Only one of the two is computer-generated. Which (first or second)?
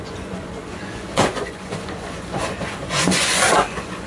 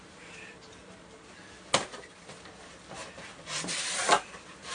first